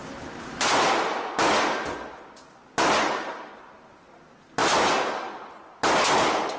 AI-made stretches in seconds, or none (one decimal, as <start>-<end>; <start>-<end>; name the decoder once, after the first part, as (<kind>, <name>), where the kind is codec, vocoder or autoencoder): none